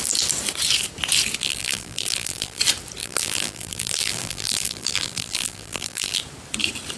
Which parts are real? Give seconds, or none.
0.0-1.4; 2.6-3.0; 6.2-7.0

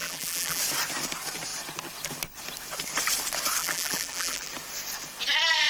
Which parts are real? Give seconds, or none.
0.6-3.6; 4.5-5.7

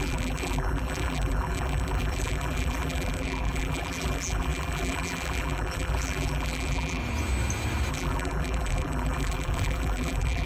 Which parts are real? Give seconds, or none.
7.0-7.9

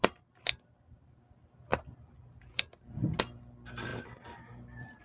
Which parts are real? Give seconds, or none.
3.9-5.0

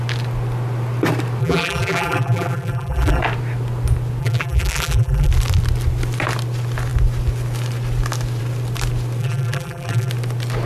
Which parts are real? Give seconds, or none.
0.0-1.4; 3.2-4.2; 5.3-9.2; 10.1-10.7